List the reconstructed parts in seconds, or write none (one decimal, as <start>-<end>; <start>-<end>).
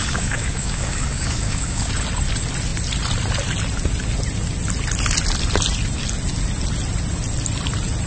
0.0-1.9